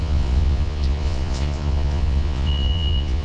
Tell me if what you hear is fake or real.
fake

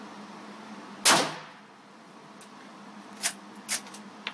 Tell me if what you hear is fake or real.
real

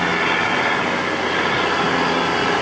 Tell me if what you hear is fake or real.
real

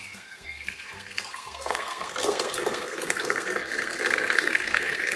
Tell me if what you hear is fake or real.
fake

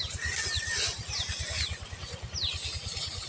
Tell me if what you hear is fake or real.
real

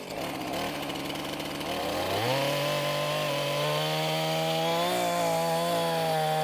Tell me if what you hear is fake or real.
real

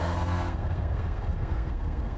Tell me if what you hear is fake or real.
fake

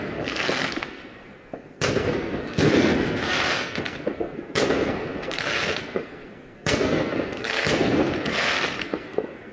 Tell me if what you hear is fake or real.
fake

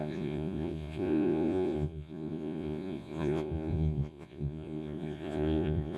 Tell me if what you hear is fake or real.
fake